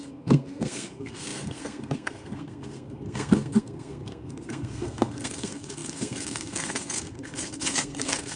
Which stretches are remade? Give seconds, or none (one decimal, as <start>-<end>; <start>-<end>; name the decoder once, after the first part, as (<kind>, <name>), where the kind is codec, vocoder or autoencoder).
0.0-8.4 (codec, SNAC)